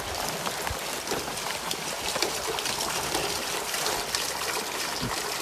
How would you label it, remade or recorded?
recorded